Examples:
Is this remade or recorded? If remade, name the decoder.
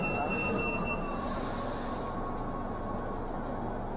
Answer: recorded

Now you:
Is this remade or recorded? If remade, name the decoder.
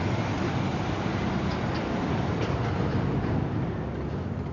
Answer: recorded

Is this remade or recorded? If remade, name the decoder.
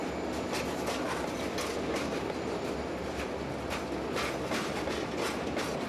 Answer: recorded